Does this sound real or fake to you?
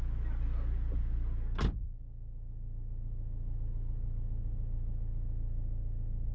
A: real